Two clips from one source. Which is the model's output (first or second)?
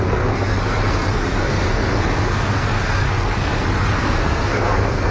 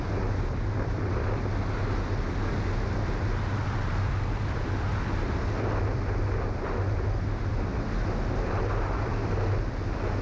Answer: first